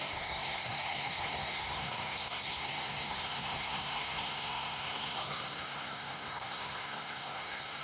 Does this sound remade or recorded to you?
remade